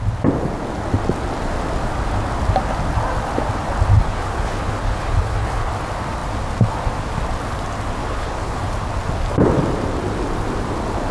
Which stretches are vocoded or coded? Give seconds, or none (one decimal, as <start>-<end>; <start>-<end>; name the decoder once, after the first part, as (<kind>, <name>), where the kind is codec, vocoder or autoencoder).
4.0-5.7 (codec, HILCodec); 8.0-8.6